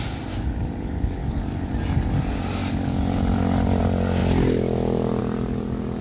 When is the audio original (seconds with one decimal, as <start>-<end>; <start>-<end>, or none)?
0.0-1.2; 1.7-6.0